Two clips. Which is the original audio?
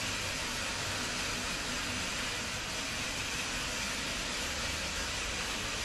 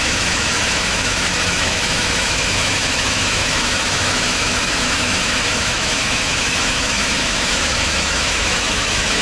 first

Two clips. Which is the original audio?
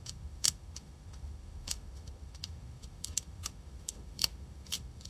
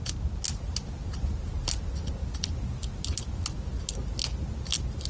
second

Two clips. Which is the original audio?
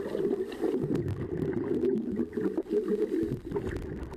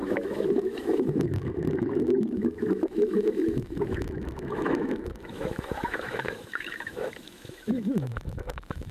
first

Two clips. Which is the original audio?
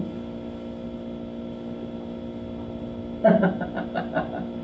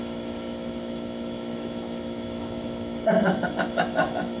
first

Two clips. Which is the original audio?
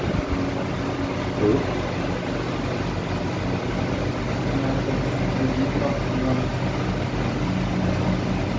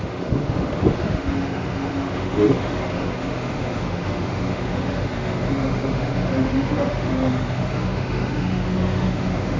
first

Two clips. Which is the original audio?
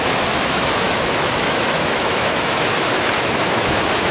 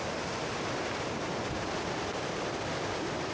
second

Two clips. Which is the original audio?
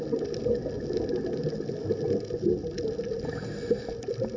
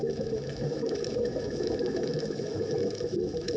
first